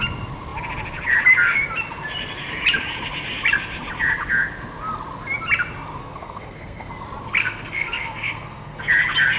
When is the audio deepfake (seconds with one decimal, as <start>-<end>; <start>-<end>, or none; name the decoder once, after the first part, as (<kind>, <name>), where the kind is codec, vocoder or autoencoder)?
6.0-6.9 (codec, SNAC); 7.4-8.8

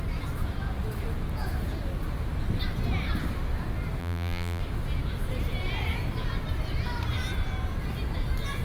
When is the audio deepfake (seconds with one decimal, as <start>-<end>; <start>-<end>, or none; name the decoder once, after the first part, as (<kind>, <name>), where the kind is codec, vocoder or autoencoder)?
4.0-4.6 (vocoder, BigVGAN v2)

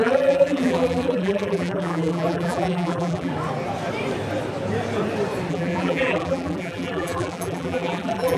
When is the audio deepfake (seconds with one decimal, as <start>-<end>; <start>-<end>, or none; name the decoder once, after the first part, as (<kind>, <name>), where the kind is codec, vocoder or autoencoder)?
0.0-3.3 (vocoder, BigVGAN v2); 5.5-8.4

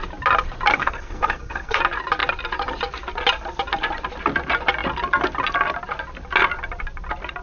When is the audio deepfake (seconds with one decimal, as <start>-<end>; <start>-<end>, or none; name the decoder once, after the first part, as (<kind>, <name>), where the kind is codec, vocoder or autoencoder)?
0.7-1.8 (codec, SNAC)